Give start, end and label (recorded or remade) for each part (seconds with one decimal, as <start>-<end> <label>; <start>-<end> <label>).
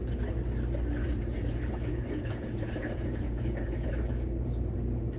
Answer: 0.0-1.0 recorded; 1.0-3.9 remade; 3.9-5.2 recorded